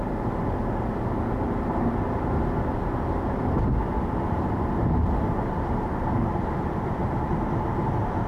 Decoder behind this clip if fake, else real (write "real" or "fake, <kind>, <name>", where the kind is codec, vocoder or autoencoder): real